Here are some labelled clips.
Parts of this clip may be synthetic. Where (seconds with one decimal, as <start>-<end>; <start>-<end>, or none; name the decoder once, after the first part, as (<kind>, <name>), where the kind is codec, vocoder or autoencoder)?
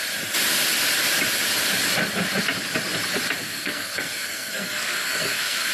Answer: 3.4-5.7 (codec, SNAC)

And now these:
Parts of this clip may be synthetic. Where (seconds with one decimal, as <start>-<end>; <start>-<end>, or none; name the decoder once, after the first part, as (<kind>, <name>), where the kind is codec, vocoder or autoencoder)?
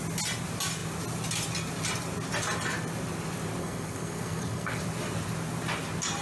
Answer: 3.6-4.8 (codec, SNAC)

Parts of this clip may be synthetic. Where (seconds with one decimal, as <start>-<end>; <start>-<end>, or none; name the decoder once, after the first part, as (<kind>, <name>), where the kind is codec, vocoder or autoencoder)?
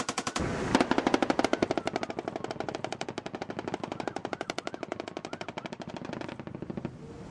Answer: none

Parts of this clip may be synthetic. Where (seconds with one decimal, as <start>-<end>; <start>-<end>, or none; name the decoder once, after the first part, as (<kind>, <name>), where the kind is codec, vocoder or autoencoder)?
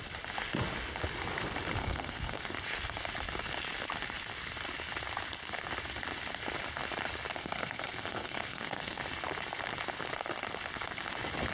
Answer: 1.8-2.4 (codec, SNAC); 7.4-9.0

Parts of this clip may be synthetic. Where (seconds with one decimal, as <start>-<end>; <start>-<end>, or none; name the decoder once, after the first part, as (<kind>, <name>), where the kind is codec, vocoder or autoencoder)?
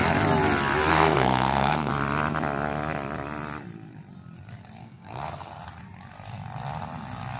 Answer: 0.9-1.9 (codec, SNAC); 4.8-5.5